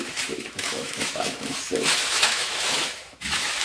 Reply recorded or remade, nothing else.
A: remade